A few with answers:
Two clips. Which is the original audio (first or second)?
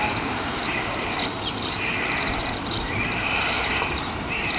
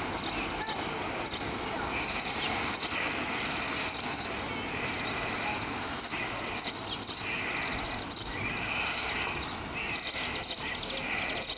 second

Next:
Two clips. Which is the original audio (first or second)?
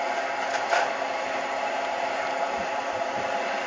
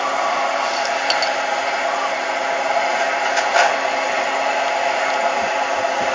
second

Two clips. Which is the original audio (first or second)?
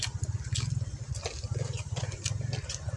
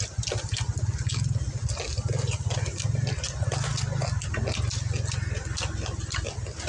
second